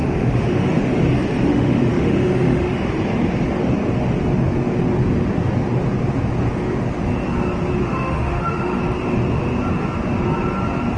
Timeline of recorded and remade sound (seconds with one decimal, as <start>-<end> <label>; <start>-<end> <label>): 0.0-0.8 remade; 0.8-1.5 recorded; 1.5-2.9 remade; 2.9-7.8 recorded; 7.8-8.8 remade; 8.8-11.0 recorded